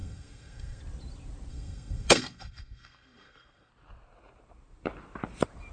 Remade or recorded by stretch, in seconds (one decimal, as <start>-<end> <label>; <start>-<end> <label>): 0.0-0.8 remade; 0.8-1.5 recorded; 1.5-3.7 remade; 3.7-5.7 recorded